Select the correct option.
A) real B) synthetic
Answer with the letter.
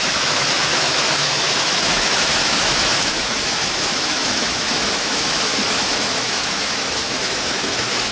B